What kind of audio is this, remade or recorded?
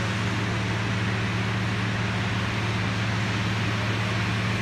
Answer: recorded